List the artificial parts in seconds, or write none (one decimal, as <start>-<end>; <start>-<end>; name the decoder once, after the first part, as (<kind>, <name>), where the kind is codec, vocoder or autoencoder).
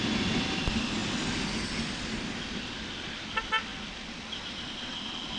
none